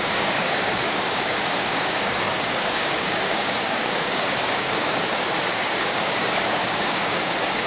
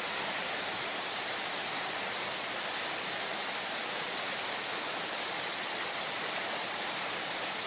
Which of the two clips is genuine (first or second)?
second